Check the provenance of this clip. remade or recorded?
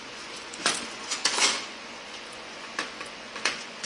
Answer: remade